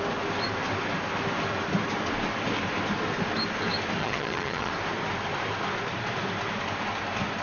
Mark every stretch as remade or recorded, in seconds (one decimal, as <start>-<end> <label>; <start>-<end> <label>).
0.0-4.0 recorded; 4.0-4.7 remade; 4.7-7.4 recorded